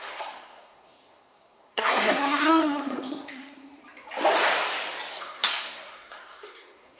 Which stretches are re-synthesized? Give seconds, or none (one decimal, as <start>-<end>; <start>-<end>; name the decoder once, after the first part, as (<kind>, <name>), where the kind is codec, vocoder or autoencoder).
0.0-3.8 (codec, SNAC); 5.1-7.0